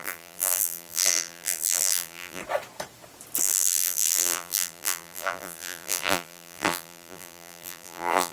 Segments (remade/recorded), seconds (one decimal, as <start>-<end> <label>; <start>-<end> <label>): 0.0-2.4 remade; 2.4-3.4 recorded; 3.4-8.3 remade